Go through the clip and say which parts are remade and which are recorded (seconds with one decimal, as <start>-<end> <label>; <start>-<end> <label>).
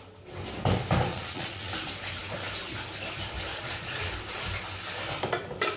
0.0-1.1 recorded; 1.1-1.7 remade; 1.7-3.5 recorded; 3.5-4.1 remade; 4.1-5.8 recorded